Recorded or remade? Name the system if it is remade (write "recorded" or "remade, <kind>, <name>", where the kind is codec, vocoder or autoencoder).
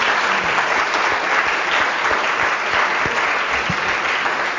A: recorded